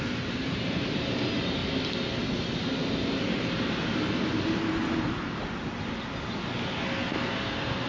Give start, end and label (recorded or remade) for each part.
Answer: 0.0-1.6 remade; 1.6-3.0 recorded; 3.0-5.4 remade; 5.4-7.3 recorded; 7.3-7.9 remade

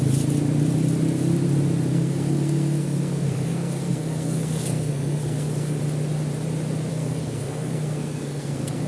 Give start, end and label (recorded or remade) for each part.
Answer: 0.0-1.9 recorded; 1.9-5.8 remade; 5.8-6.9 recorded; 6.9-8.9 remade

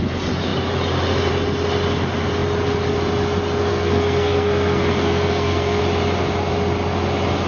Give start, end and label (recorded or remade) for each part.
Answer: 0.0-3.7 recorded; 3.7-5.8 remade; 5.8-7.5 recorded